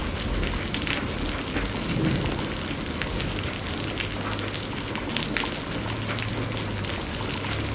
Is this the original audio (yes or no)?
yes